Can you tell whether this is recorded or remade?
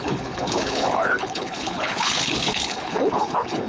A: remade